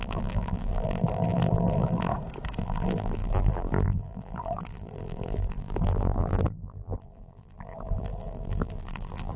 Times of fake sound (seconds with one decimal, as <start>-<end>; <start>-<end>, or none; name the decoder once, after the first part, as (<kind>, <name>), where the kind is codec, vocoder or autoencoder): 0.0-2.1 (vocoder, BigVGAN v2); 2.6-9.4